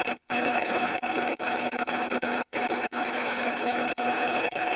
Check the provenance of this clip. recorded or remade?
remade